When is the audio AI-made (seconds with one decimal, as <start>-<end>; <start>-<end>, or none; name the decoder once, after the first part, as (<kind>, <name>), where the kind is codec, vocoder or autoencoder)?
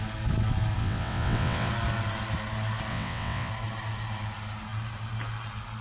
0.8-1.7 (vocoder, WaveNeXt); 2.9-3.5